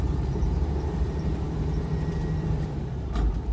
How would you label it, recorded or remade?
remade